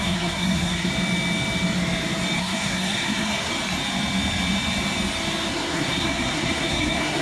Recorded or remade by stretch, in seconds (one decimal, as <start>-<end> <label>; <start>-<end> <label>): 0.0-0.9 remade; 0.9-2.4 recorded; 2.4-3.5 remade; 3.5-5.5 recorded; 5.5-7.2 remade

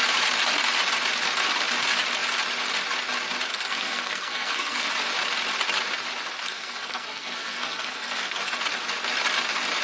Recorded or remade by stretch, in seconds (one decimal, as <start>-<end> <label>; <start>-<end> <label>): 0.0-3.5 recorded; 3.5-4.9 remade; 4.9-6.4 recorded; 6.4-8.5 remade; 8.5-9.8 recorded

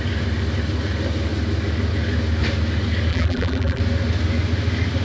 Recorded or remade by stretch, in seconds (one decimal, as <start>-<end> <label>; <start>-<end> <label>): 0.0-3.1 recorded; 3.1-3.8 remade; 3.8-5.0 recorded

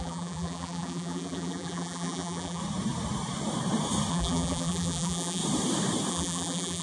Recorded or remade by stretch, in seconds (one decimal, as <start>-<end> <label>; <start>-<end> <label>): 0.0-2.6 remade; 2.6-4.1 recorded; 4.1-5.4 remade; 5.4-6.1 recorded; 6.1-6.8 remade

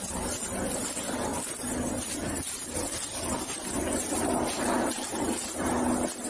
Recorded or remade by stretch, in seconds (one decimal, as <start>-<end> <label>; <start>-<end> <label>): 0.0-4.2 recorded; 4.2-5.7 remade; 5.7-6.3 recorded

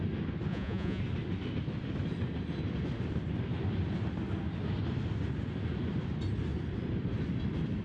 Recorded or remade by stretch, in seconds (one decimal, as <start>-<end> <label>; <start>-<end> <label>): 0.0-0.5 recorded; 0.5-1.0 remade; 1.0-7.8 recorded

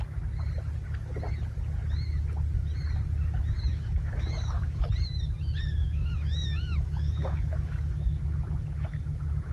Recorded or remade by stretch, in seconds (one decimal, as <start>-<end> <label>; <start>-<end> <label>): 0.0-3.7 recorded; 3.7-4.8 remade; 4.8-5.8 recorded; 5.8-9.5 remade